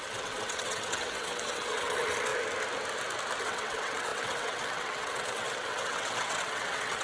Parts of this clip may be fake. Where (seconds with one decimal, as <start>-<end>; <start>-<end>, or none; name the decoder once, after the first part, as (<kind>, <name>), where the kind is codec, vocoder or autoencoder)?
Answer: 0.0-2.3 (vocoder, WaveNeXt); 3.4-7.0